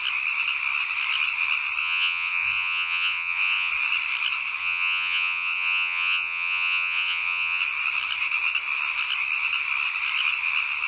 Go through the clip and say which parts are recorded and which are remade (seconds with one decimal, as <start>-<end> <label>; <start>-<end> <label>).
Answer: 0.0-1.8 recorded; 1.8-3.7 remade; 3.7-4.6 recorded; 4.6-7.6 remade; 7.6-10.9 recorded